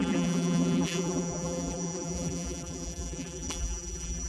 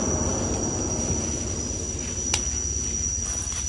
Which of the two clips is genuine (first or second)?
second